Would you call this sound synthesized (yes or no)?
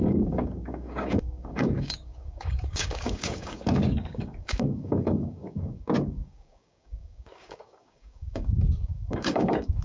yes